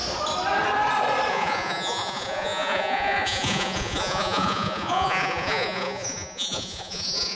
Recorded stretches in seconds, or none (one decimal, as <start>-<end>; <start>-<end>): 0.0-1.3